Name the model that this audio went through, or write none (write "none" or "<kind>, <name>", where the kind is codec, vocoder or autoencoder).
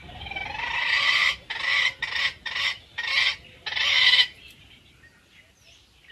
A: none